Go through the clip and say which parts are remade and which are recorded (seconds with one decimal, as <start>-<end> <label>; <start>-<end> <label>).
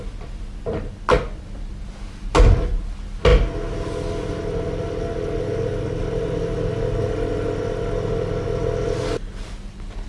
0.0-10.1 recorded